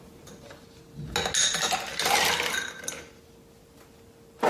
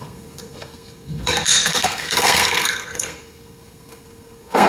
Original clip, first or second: first